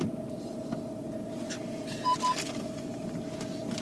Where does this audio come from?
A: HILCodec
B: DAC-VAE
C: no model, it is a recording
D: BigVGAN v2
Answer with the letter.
D